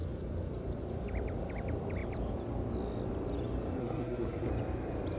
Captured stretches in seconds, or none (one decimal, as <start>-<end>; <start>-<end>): 0.0-3.8; 4.5-5.2